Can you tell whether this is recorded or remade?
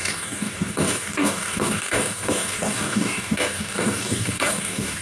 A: remade